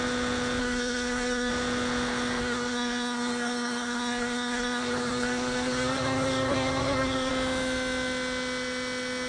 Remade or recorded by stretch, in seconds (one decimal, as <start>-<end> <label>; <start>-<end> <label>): 0.0-0.6 recorded; 0.6-1.5 remade; 1.5-2.4 recorded; 2.4-7.3 remade; 7.3-9.3 recorded